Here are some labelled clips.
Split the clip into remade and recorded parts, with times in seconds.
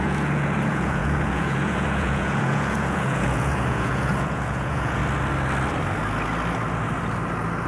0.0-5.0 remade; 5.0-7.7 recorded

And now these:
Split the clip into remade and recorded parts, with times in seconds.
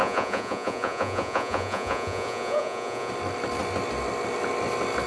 0.0-3.1 remade; 3.1-5.1 recorded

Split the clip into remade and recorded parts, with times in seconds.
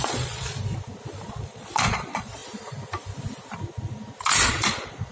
0.0-0.5 remade; 0.5-1.3 recorded; 1.3-2.4 remade; 2.4-4.5 recorded; 4.5-5.1 remade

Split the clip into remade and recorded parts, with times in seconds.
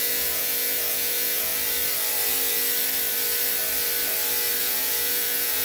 0.0-1.5 remade; 1.5-4.6 recorded; 4.6-5.6 remade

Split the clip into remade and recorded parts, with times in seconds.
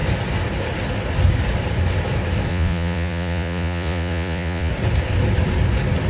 0.0-2.5 recorded; 2.5-4.7 remade; 4.7-6.1 recorded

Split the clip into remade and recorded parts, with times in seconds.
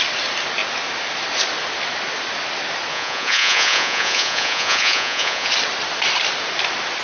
0.0-2.9 recorded; 2.9-5.5 remade; 5.5-7.0 recorded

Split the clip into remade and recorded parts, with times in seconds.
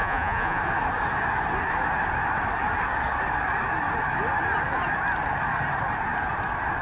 0.0-0.6 remade; 0.6-6.8 recorded